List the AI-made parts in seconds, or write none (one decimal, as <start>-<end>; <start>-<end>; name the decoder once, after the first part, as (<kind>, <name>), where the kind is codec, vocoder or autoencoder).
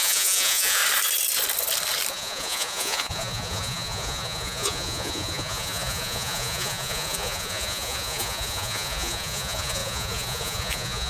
0.0-0.8 (vocoder, Vocos); 2.1-11.1